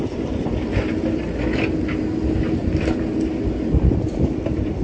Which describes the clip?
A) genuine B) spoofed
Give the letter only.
A